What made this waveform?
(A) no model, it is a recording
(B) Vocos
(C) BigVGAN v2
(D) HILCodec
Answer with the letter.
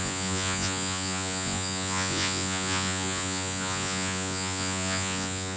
B